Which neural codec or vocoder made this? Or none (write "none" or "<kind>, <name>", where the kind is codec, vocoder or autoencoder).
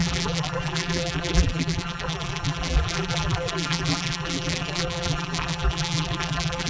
vocoder, BigVGAN v2